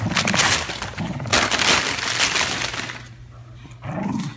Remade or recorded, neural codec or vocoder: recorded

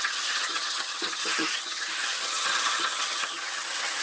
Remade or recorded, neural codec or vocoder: remade, vocoder, HiFi-GAN